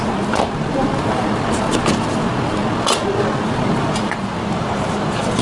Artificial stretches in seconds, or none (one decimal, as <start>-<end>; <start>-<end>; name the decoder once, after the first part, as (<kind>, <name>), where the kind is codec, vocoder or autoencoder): 0.0-2.6 (vocoder, BigVGAN v2); 3.4-5.4